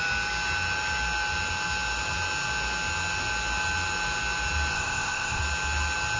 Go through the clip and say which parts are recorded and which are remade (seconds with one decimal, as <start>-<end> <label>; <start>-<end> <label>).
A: 0.0-4.7 recorded; 4.7-5.4 remade; 5.4-6.2 recorded